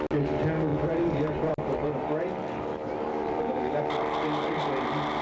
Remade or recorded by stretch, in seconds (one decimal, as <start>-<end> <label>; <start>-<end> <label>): 0.0-0.7 recorded; 0.7-3.8 remade; 3.8-5.2 recorded

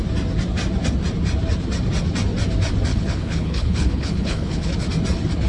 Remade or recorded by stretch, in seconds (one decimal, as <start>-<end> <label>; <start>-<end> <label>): 0.0-2.9 recorded; 2.9-4.7 remade; 4.7-5.5 recorded

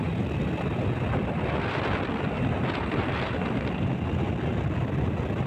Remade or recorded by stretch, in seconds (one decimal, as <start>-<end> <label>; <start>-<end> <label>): 0.0-5.5 recorded

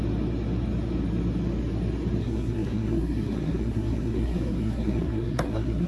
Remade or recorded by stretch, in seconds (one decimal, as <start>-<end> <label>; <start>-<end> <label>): 0.0-2.2 recorded; 2.2-5.9 remade